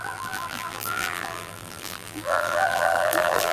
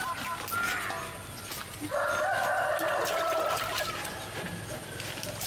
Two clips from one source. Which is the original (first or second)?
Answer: second